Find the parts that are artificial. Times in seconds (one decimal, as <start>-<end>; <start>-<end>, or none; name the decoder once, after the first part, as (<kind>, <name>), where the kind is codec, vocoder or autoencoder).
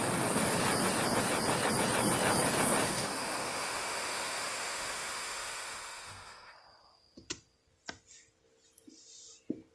2.8-6.5 (autoencoder, DAC-VAE)